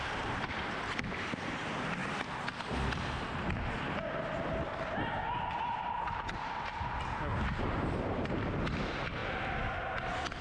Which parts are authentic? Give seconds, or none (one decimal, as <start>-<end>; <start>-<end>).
0.0-7.3; 8.4-10.4